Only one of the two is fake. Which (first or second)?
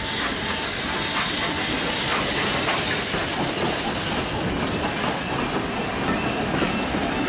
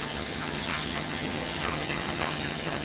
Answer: second